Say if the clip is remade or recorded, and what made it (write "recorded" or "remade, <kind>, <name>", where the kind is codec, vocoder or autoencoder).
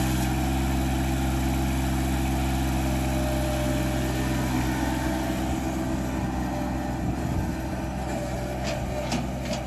recorded